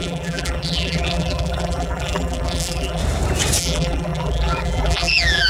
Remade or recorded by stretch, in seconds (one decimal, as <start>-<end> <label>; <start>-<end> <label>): 0.0-3.0 remade; 3.0-3.6 recorded; 3.6-5.5 remade